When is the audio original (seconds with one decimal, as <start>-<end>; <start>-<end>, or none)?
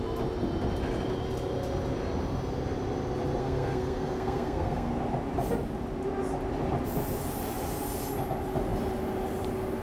0.0-3.4; 4.9-9.8